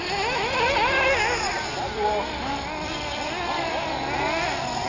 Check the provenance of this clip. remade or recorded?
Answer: recorded